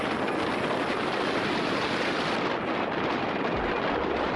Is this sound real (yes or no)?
yes